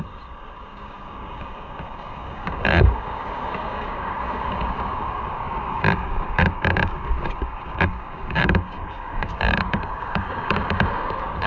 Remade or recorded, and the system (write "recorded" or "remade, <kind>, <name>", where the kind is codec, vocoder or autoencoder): remade, codec, DAC